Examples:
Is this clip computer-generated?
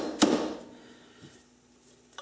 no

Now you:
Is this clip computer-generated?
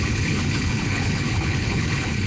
yes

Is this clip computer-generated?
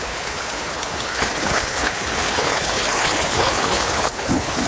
yes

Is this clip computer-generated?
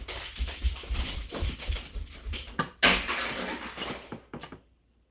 no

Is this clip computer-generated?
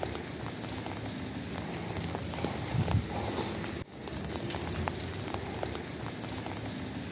no